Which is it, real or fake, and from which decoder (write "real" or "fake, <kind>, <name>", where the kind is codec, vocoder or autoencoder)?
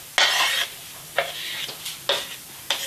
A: real